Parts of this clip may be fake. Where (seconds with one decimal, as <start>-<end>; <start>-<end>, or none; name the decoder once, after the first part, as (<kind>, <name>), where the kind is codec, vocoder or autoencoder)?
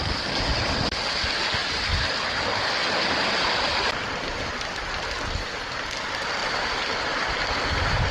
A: none